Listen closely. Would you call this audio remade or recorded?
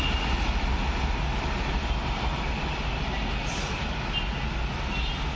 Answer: recorded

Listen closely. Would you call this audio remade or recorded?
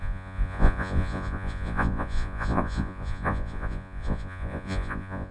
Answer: remade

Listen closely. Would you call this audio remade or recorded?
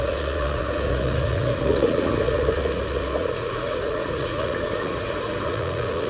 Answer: remade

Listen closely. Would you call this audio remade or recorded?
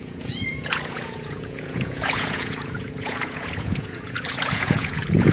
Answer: remade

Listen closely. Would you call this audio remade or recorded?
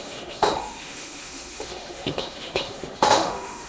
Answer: remade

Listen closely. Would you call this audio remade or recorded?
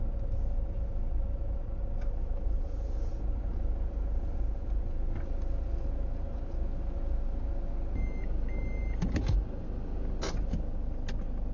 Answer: recorded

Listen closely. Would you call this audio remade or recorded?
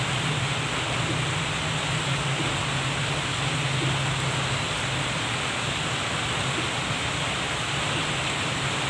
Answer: recorded